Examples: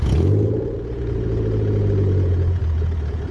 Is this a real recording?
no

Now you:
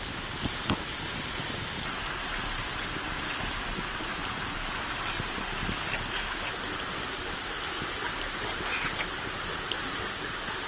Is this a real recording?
yes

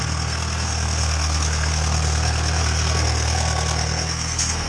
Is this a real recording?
no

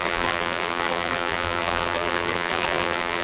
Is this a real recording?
no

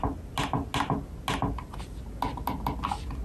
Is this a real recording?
yes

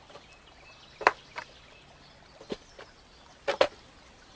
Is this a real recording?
yes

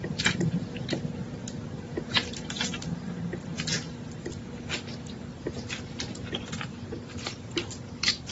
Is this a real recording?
yes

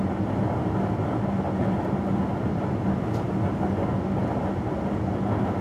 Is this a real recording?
yes